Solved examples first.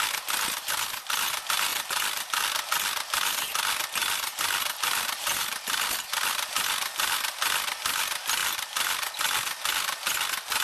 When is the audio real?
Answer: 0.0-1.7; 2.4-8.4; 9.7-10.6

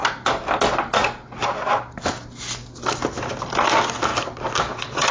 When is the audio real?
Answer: 0.0-2.8

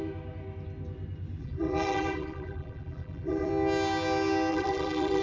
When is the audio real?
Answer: 0.0-1.4; 3.5-4.5

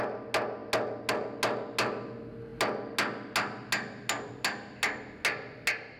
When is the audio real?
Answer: 0.0-6.0

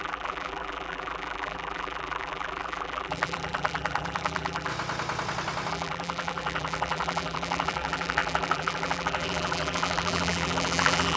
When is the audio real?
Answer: 4.7-5.7